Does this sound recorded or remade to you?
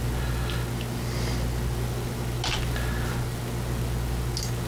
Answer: recorded